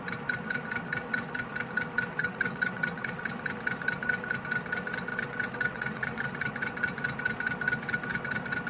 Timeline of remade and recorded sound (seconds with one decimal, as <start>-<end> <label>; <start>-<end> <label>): 0.0-2.2 recorded; 2.2-3.3 remade; 3.3-5.1 recorded; 5.1-6.2 remade; 6.2-8.7 recorded